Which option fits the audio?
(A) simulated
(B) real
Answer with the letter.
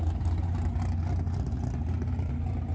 B